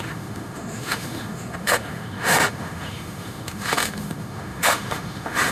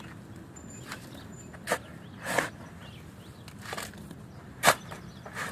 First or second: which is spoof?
first